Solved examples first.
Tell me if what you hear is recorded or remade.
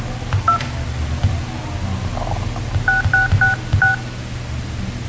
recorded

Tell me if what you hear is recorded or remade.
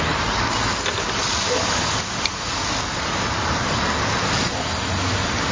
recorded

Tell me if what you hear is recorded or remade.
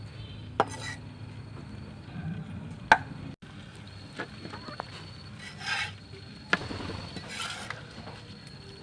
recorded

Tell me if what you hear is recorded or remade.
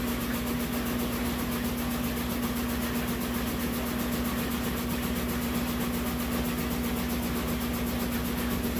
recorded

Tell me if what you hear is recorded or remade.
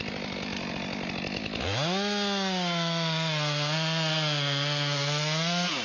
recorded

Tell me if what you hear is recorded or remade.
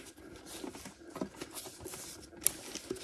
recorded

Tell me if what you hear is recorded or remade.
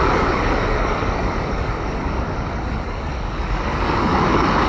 remade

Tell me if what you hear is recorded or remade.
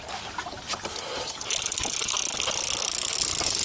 recorded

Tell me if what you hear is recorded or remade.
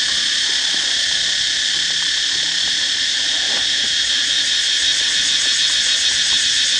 recorded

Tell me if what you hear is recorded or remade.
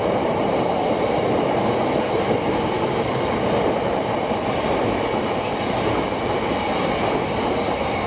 recorded